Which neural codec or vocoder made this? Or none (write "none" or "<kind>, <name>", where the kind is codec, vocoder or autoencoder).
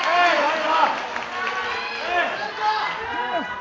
none